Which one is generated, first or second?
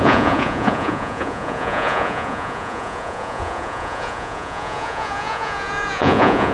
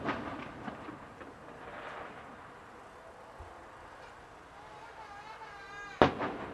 first